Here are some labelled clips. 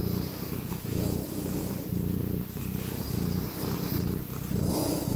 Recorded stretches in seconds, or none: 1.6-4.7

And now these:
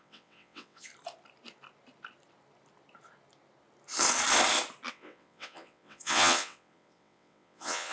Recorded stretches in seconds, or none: 0.9-4.9

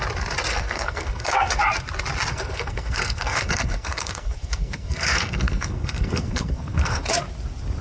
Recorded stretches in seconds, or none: 0.0-0.5; 1.6-2.3; 7.0-7.8

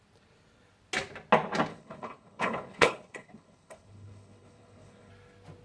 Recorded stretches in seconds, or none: 0.0-1.7; 5.1-5.6

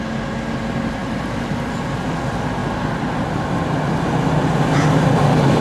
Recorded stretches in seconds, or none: 0.0-5.6

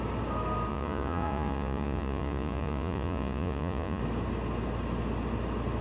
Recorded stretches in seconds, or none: 0.0-0.7; 4.0-5.8

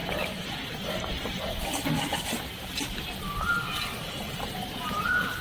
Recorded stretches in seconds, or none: 2.7-3.9; 4.5-5.4

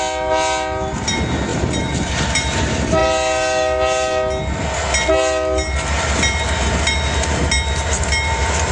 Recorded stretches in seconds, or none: 0.0-1.5; 2.1-8.7